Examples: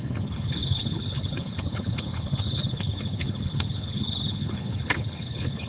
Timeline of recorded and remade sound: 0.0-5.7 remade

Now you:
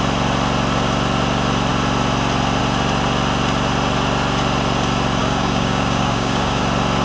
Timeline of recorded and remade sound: 0.0-5.2 recorded; 5.2-6.6 remade; 6.6-7.0 recorded

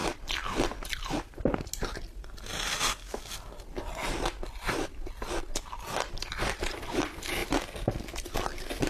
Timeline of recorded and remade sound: 0.0-8.9 recorded

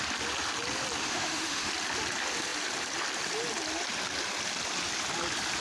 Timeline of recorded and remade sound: 0.0-1.0 recorded; 1.0-1.7 remade; 1.7-5.6 recorded

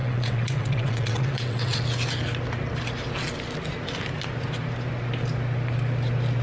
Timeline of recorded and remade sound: 0.0-1.8 remade; 1.8-6.4 recorded

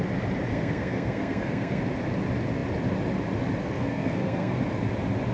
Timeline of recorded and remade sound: 0.0-0.5 recorded; 0.5-1.8 remade; 1.8-3.6 recorded; 3.6-4.6 remade; 4.6-5.3 recorded